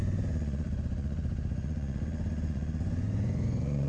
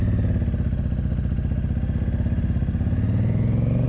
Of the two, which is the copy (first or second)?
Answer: first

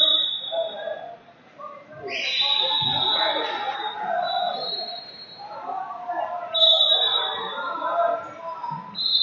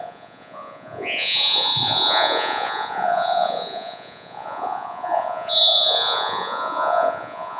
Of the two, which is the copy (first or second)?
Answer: second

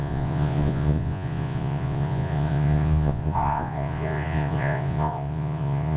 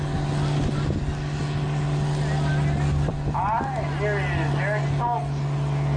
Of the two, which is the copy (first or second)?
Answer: first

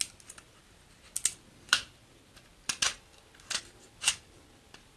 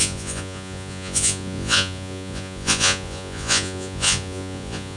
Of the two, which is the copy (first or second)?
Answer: second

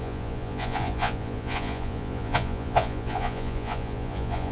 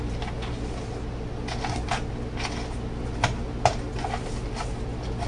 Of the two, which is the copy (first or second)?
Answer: first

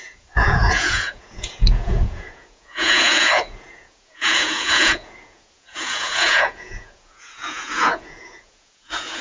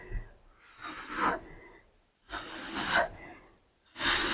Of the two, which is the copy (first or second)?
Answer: first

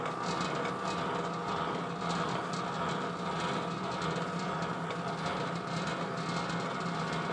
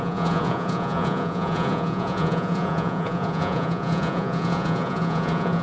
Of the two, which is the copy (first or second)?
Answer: second